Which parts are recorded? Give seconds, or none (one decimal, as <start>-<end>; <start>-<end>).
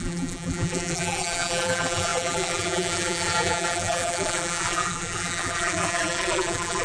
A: none